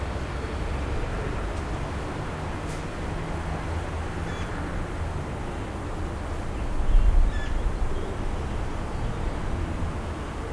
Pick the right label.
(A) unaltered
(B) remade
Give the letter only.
A